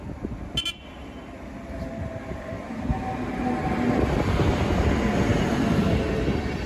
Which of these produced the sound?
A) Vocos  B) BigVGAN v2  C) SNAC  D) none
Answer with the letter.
D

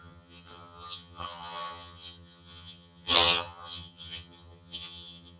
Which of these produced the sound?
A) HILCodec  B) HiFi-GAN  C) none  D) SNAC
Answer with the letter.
B